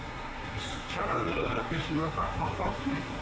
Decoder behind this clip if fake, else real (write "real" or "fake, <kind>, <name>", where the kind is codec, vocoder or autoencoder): fake, codec, SNAC